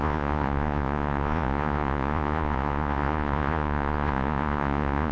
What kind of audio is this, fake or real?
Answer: fake